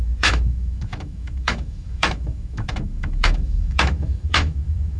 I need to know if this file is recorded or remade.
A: remade